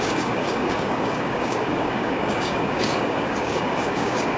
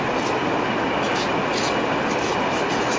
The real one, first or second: second